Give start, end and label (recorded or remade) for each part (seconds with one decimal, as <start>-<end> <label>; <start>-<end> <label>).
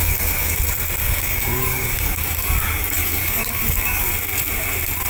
0.0-0.6 remade; 0.6-1.0 recorded; 1.0-4.1 remade; 4.1-5.1 recorded